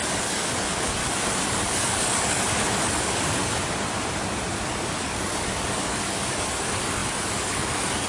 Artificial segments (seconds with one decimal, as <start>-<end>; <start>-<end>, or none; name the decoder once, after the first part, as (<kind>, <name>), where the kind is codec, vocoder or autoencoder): 0.0-1.0 (codec, DAC); 1.5-3.4; 4.7-8.1